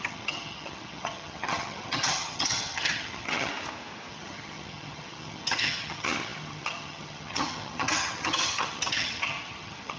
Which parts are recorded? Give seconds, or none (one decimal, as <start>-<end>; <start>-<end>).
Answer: 3.5-4.1